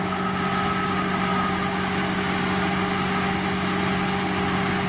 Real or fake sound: real